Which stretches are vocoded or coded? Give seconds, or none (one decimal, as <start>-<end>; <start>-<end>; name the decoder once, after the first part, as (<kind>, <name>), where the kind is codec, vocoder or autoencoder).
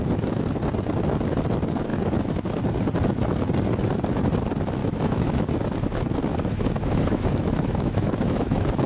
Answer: 1.9-2.6 (autoencoder, DAC-VAE); 4.8-5.5; 6.3-8.9